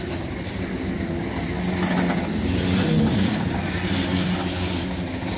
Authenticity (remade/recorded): recorded